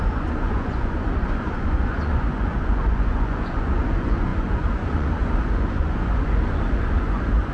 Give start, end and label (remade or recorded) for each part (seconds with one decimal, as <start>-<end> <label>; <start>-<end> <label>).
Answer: 0.0-7.5 remade